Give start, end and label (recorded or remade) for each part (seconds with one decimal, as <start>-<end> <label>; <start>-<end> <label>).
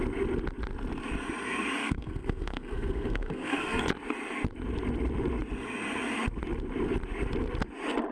0.0-1.8 recorded; 1.8-3.8 remade; 3.8-8.1 recorded